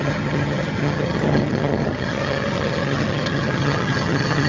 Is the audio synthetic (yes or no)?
yes